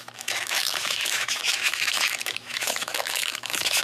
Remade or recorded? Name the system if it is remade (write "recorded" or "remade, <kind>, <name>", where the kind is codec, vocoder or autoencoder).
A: remade, autoencoder, DAC-VAE